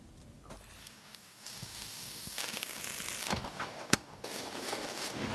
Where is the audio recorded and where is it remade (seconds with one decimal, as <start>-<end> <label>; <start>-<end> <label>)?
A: 0.0-0.8 recorded; 0.8-2.8 remade; 2.8-3.2 recorded; 3.2-5.3 remade